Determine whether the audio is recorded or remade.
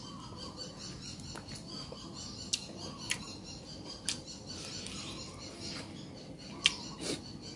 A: recorded